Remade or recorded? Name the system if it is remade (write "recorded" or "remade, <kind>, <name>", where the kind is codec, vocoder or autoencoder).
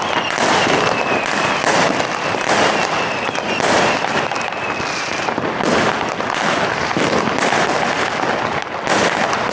recorded